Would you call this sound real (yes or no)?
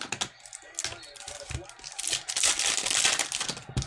yes